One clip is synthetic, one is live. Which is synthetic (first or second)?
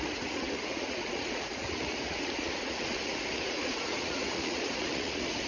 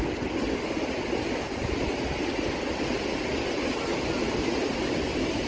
first